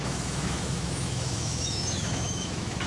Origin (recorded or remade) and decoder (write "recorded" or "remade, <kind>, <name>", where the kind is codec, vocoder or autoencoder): remade, autoencoder, DAC-VAE